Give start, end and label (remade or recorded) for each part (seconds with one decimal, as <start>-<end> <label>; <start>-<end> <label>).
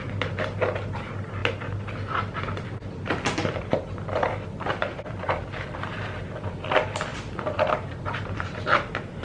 0.0-1.4 remade; 1.4-3.6 recorded; 3.6-9.2 remade